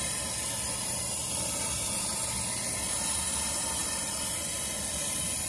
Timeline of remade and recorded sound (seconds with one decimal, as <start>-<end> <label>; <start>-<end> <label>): 0.0-5.5 recorded